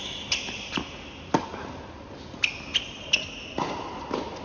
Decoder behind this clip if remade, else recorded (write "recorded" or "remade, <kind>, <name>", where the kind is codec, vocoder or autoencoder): recorded